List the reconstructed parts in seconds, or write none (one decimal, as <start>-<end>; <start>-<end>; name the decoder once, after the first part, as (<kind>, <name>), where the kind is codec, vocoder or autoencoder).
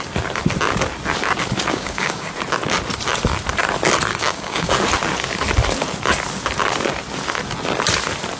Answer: 1.7-2.3 (codec, DAC); 4.1-4.7